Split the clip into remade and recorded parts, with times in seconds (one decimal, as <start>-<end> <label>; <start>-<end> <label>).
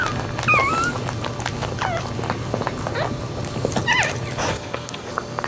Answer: 0.0-4.5 recorded; 4.5-5.1 remade; 5.1-5.5 recorded